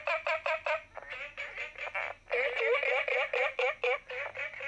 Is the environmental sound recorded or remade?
recorded